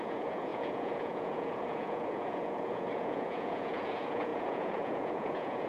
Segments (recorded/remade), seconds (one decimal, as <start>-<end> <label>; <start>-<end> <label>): 0.0-5.7 remade